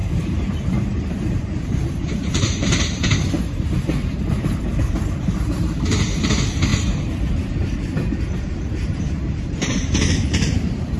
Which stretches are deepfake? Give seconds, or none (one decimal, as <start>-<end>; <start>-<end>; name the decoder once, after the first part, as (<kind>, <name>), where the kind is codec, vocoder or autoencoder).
0.0-6.7 (vocoder, BigVGAN v2); 8.2-11.0